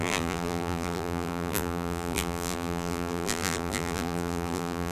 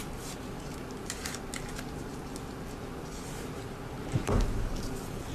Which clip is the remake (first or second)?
first